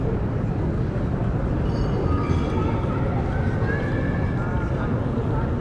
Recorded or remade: recorded